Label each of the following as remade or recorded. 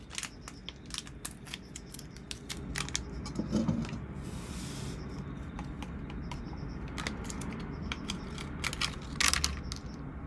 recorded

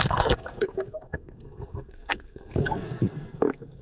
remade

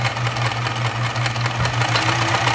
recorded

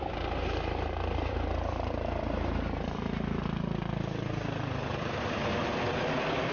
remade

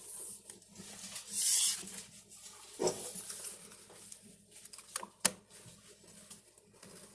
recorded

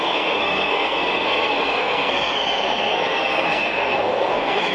remade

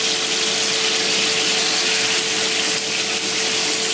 recorded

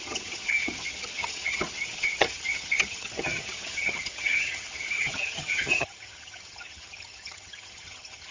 remade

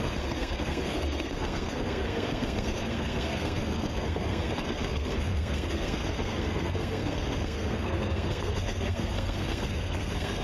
remade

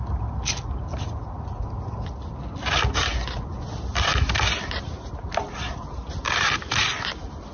recorded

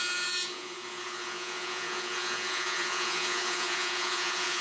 remade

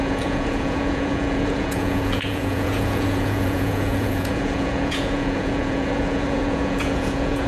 remade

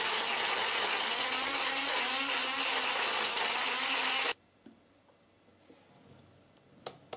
recorded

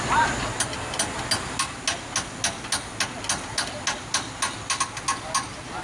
recorded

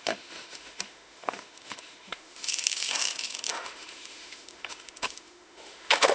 remade